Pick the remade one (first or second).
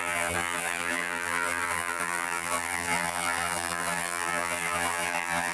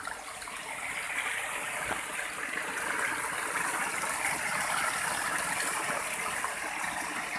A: first